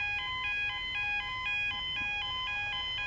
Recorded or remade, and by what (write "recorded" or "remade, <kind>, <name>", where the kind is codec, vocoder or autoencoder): recorded